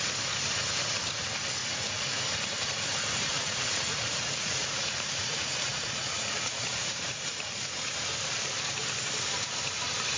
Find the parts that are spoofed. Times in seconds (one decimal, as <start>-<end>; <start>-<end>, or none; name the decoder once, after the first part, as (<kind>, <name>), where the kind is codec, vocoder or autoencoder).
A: 1.6-2.2 (vocoder, Vocos); 3.3-7.2